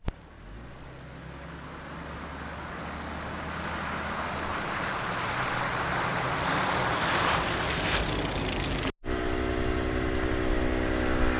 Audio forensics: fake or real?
real